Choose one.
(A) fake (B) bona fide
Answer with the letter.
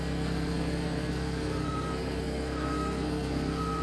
A